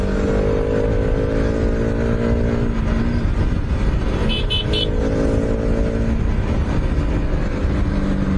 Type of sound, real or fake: real